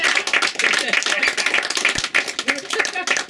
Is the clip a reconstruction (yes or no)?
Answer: no